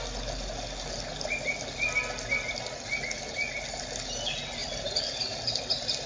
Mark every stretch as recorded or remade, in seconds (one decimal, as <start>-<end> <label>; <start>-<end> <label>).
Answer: 0.0-4.6 recorded; 4.6-5.4 remade; 5.4-6.1 recorded